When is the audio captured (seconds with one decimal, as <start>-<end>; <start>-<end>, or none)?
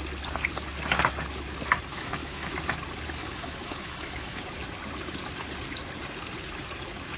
0.0-1.9; 2.5-3.2; 4.4-7.2